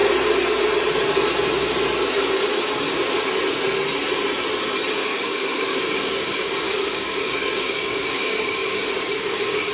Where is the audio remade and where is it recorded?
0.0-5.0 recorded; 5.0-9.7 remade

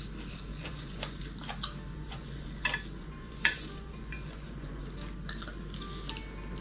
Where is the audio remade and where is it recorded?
0.0-0.5 recorded; 0.5-1.2 remade; 1.2-1.9 recorded; 1.9-2.6 remade; 2.6-3.0 recorded; 3.0-4.8 remade; 4.8-6.6 recorded

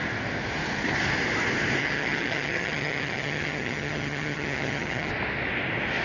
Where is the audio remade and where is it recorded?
0.0-1.8 recorded; 1.8-5.1 remade; 5.1-6.0 recorded

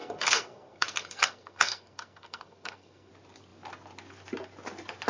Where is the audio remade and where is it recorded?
0.0-3.1 remade; 3.1-5.1 recorded

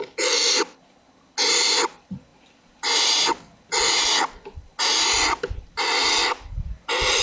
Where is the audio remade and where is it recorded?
0.0-7.2 recorded

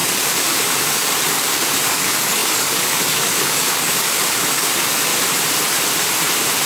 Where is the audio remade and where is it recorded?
0.0-5.1 remade; 5.1-6.7 recorded